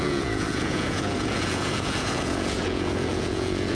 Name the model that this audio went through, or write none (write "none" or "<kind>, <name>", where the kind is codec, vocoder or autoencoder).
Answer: vocoder, Vocos